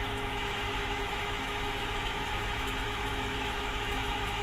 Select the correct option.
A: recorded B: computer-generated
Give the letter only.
B